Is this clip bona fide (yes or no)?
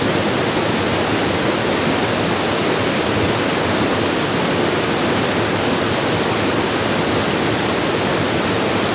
yes